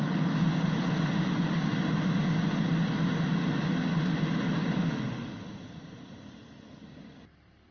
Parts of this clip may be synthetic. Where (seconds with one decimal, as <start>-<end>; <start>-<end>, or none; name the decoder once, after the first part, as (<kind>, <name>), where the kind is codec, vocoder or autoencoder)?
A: none